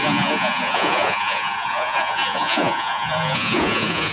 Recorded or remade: remade